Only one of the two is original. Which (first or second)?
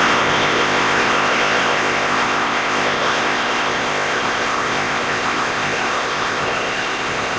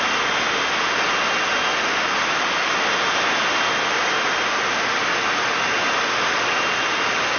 second